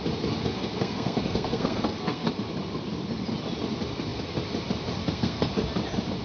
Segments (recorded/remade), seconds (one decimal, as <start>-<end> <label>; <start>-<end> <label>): 0.0-0.4 recorded; 0.4-2.3 remade; 2.3-5.0 recorded; 5.0-5.5 remade; 5.5-6.2 recorded